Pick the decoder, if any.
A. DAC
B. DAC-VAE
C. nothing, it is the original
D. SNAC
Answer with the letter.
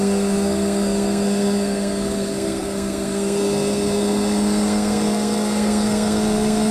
D